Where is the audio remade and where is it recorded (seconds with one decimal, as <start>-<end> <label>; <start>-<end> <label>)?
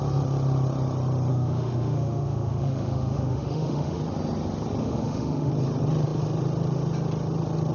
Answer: 0.0-1.3 recorded; 1.3-4.0 remade; 4.0-4.8 recorded; 4.8-5.5 remade; 5.5-7.7 recorded